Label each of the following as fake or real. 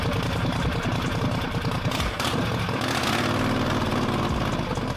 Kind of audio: real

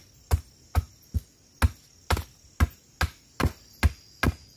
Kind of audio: real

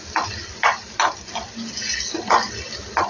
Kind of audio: real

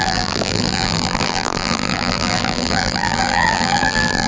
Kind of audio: fake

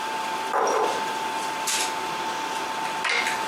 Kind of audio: real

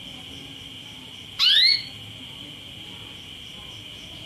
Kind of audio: real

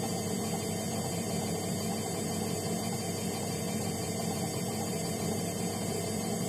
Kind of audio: fake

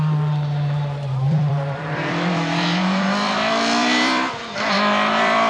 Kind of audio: fake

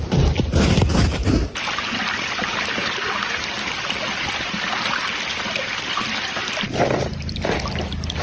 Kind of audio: real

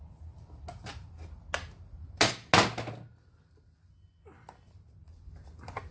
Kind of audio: real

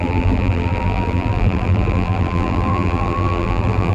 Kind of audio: fake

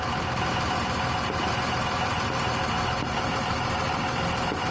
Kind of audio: real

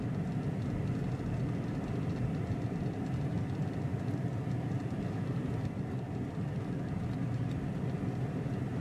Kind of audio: real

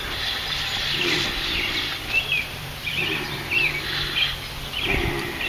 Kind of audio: fake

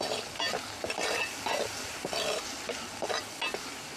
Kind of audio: real